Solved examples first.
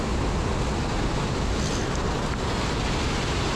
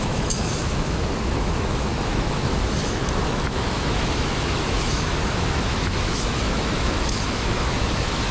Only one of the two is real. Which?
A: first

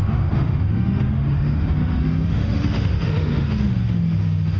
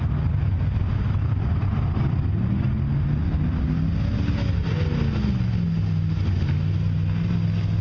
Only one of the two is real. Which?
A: second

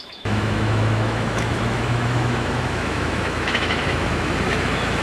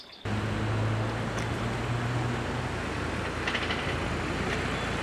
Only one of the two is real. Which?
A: second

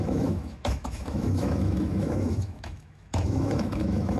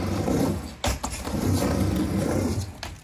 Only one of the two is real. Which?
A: second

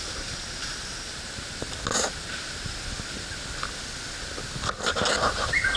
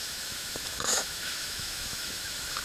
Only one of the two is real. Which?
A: first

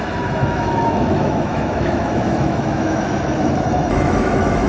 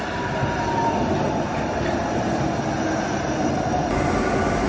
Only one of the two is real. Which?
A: second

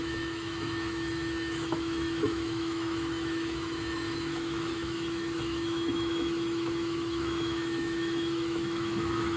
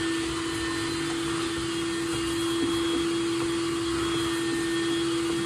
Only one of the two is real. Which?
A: second